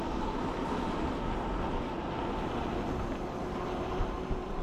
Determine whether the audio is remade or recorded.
recorded